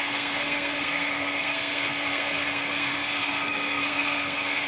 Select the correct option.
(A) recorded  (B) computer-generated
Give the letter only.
B